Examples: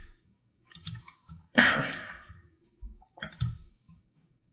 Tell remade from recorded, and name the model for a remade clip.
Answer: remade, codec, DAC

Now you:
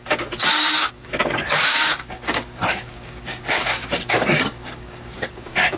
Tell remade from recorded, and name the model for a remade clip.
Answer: remade, codec, DAC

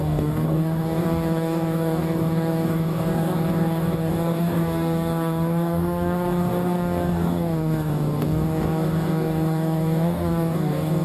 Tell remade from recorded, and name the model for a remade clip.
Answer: remade, codec, DAC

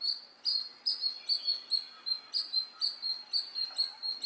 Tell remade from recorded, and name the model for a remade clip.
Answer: recorded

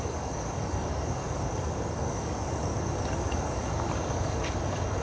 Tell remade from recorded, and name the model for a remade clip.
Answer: remade, codec, DAC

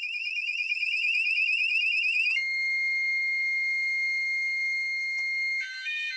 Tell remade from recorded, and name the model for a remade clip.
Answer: remade, codec, DAC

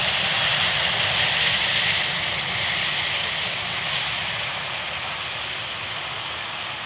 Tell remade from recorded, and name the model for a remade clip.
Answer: recorded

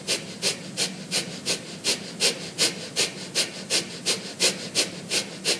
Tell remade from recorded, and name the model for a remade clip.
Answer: recorded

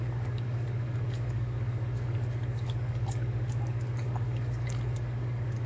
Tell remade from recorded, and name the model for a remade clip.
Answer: remade, codec, DAC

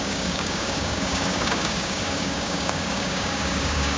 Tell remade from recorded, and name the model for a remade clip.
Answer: remade, codec, DAC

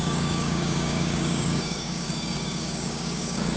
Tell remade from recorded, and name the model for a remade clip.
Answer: remade, codec, DAC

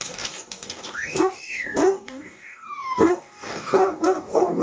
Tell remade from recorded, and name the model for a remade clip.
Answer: remade, codec, DAC